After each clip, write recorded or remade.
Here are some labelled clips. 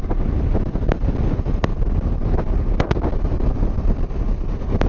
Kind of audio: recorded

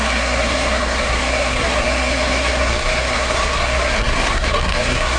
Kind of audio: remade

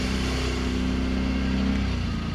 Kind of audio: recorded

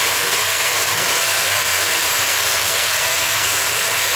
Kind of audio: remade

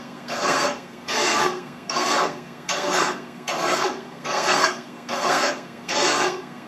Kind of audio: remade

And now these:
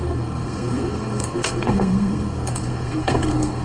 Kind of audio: remade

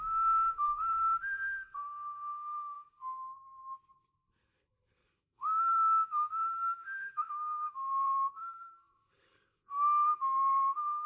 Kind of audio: remade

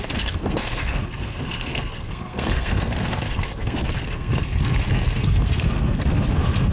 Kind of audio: remade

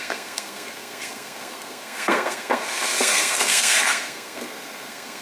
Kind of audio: remade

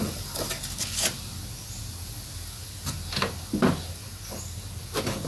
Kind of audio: recorded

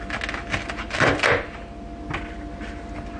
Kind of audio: recorded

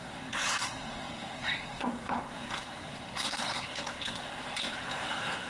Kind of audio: remade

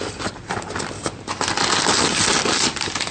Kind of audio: recorded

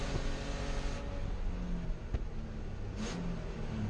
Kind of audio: recorded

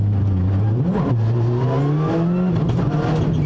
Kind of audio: recorded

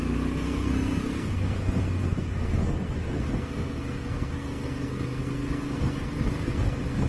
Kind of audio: remade